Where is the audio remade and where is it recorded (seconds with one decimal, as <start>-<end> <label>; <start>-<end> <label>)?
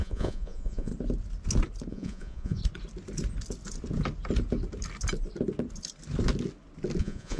0.0-0.9 remade; 0.9-1.9 recorded; 1.9-2.6 remade; 2.6-7.0 recorded; 7.0-7.4 remade